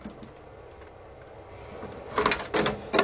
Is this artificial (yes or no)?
no